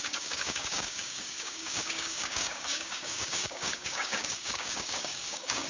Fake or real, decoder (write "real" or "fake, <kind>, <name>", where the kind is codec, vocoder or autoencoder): fake, codec, DAC